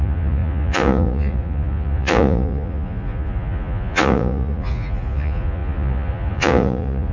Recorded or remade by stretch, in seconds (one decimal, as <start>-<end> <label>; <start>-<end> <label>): 0.0-7.1 remade